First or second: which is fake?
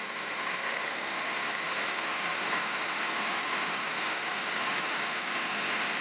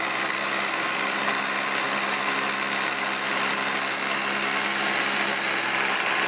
first